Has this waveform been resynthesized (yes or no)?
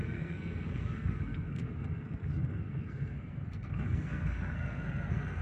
yes